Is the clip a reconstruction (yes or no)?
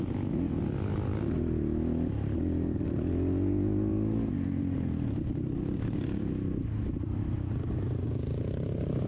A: no